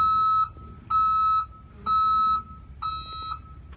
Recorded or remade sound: recorded